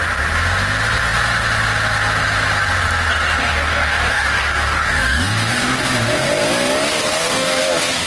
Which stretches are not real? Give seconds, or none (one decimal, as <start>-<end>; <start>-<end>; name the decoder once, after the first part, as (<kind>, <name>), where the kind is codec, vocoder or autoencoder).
3.4-5.8 (codec, DAC); 7.0-7.6